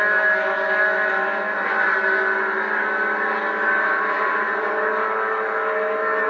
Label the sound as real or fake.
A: real